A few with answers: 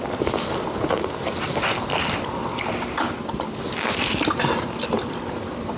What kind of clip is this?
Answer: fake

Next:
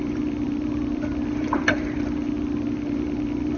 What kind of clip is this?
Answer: fake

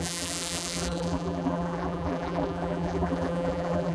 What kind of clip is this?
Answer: fake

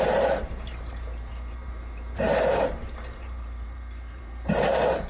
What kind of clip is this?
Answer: fake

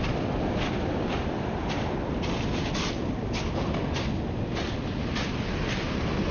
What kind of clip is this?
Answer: real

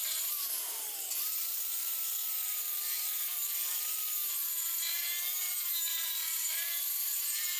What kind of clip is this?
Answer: fake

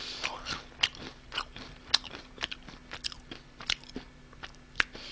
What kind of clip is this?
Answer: real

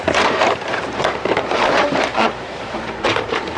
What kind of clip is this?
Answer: fake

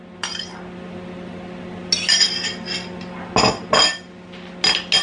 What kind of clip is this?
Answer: real